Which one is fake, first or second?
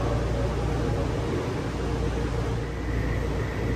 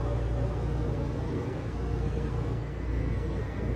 second